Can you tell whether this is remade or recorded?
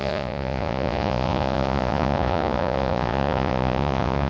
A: remade